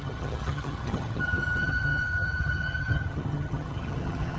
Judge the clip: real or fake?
fake